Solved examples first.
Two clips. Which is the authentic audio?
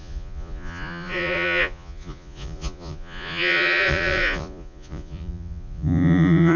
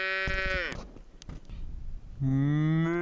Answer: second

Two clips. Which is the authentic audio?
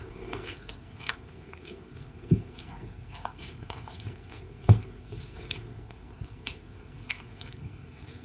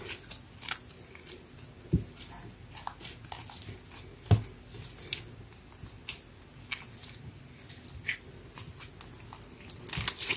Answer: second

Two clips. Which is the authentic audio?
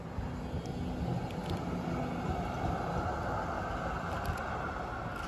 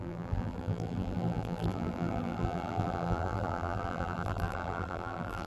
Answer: first